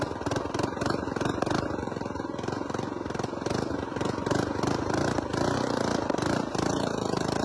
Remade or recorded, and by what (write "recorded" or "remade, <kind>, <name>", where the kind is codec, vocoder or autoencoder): recorded